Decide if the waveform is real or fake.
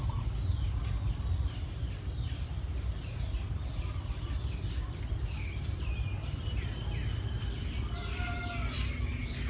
real